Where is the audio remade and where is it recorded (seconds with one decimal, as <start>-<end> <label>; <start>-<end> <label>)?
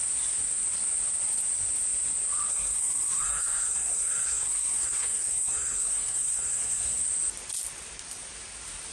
0.0-2.5 recorded; 2.5-7.0 remade; 7.0-8.9 recorded